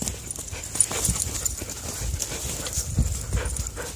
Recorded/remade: recorded